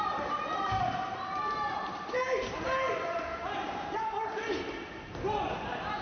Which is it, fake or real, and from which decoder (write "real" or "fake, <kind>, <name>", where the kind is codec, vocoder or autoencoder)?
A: fake, vocoder, BigVGAN v2